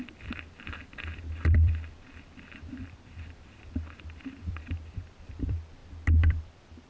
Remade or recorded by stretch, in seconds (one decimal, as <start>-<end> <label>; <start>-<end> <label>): 0.0-6.9 remade